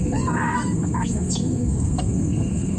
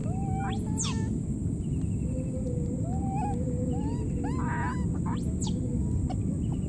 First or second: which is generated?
first